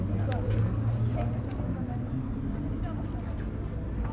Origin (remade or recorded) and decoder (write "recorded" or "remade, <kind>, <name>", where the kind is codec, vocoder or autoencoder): recorded